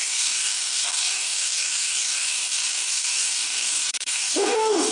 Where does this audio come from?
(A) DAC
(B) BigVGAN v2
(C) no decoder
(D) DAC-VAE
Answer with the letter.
A